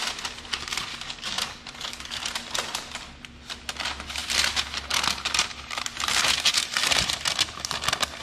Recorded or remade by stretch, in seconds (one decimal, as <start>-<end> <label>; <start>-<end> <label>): 0.0-0.9 recorded; 0.9-2.2 remade; 2.2-8.2 recorded